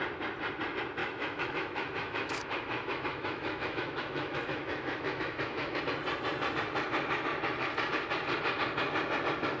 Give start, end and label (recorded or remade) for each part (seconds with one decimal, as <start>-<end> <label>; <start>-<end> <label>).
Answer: 0.0-1.0 recorded; 1.0-5.8 remade; 5.8-9.6 recorded